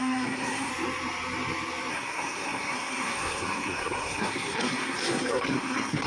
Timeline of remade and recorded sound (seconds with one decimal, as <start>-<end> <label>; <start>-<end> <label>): 0.0-0.7 remade; 0.7-1.9 recorded; 1.9-6.1 remade